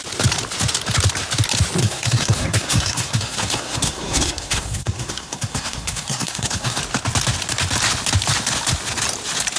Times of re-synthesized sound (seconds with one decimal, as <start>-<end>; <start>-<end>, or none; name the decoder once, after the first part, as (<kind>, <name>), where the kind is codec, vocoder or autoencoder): 1.8-6.8 (codec, SNAC)